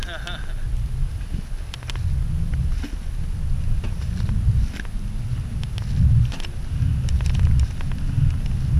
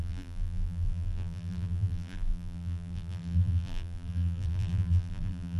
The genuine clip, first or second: first